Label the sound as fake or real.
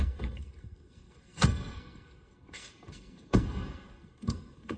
fake